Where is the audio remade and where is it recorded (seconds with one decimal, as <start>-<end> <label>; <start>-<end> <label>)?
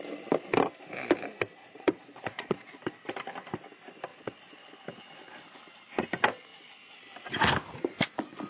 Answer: 0.0-1.6 recorded; 1.6-2.8 remade; 2.8-4.1 recorded; 4.1-4.7 remade; 4.7-8.5 recorded